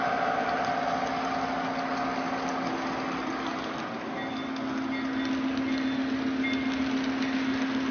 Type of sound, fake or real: real